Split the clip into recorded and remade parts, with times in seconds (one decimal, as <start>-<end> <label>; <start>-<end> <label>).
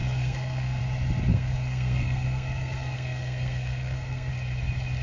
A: 0.0-0.8 remade; 0.8-1.3 recorded; 1.3-4.3 remade; 4.3-5.0 recorded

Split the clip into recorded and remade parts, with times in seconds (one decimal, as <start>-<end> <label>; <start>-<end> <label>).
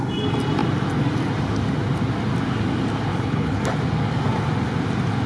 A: 0.0-3.1 recorded; 3.1-3.6 remade; 3.6-5.3 recorded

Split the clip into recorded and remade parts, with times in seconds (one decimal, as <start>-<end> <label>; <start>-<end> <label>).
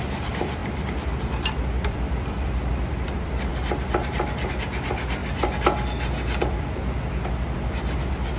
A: 0.0-3.5 remade; 3.5-4.5 recorded; 4.5-5.2 remade; 5.2-6.4 recorded; 6.4-8.4 remade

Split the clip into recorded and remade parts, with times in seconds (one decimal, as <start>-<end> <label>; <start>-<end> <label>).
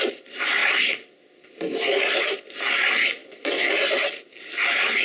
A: 0.0-0.6 remade; 0.6-1.2 recorded; 1.2-3.2 remade; 3.2-5.0 recorded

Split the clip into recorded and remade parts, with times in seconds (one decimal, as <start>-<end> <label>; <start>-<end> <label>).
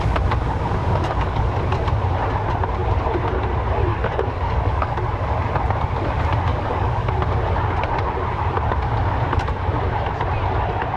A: 0.0-0.8 recorded; 0.8-1.6 remade; 1.6-3.9 recorded; 3.9-5.0 remade; 5.0-6.5 recorded; 6.5-7.1 remade; 7.1-11.0 recorded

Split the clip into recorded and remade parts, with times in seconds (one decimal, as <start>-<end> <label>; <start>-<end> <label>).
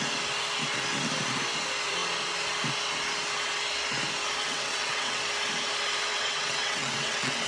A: 0.0-4.4 recorded; 4.4-5.2 remade; 5.2-6.1 recorded; 6.1-7.5 remade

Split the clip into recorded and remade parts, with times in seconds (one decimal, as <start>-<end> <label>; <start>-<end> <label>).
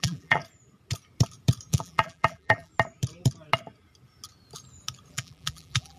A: 0.0-0.4 remade; 0.4-1.7 recorded; 1.7-2.7 remade; 2.7-5.1 recorded; 5.1-6.0 remade